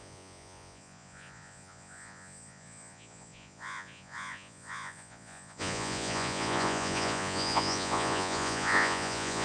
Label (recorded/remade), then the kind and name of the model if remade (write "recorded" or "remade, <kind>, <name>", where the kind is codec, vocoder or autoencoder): remade, vocoder, Vocos